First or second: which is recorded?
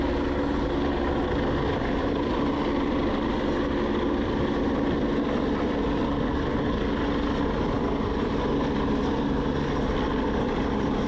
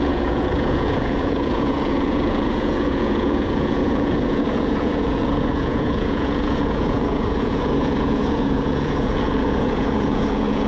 first